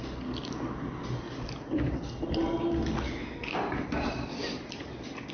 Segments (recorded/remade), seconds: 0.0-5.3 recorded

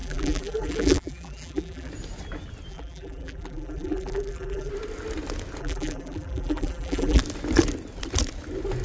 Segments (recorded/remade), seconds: 0.0-1.9 remade; 1.9-2.7 recorded; 2.7-4.7 remade; 4.7-5.6 recorded; 5.6-7.2 remade; 7.2-8.8 recorded

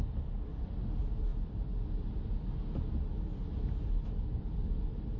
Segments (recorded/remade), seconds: 0.0-5.2 recorded